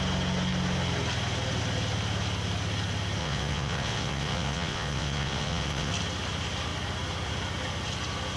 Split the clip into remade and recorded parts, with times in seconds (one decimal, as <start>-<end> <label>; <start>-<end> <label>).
0.0-3.2 recorded; 3.2-5.9 remade; 5.9-8.4 recorded